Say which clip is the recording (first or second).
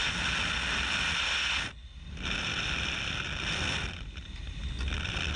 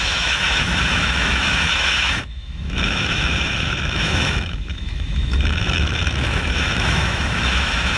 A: first